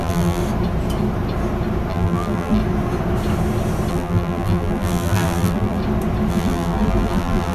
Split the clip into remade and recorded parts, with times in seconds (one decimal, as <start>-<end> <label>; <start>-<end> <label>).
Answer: 0.0-0.4 remade; 0.4-1.9 recorded; 1.9-2.6 remade; 2.6-3.9 recorded; 3.9-5.8 remade; 5.8-6.3 recorded; 6.3-7.5 remade